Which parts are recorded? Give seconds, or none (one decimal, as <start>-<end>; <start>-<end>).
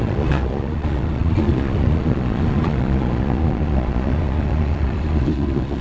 none